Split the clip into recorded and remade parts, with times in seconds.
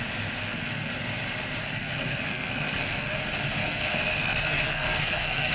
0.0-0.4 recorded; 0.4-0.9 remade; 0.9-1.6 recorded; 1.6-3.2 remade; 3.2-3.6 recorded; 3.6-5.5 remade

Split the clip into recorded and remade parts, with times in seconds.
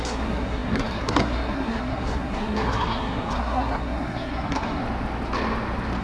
0.0-4.8 remade; 4.8-6.0 recorded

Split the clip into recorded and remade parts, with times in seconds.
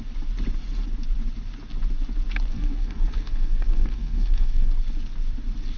0.0-2.5 recorded; 2.5-4.7 remade; 4.7-5.8 recorded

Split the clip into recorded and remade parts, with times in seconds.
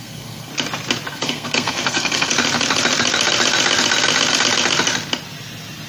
0.0-0.5 remade; 0.5-1.1 recorded; 1.1-2.3 remade; 2.3-5.9 recorded